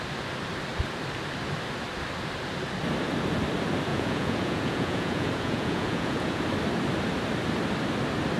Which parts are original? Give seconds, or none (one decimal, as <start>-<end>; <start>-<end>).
0.0-3.9; 6.4-8.4